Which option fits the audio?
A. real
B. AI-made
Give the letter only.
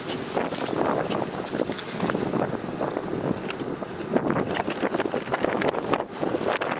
A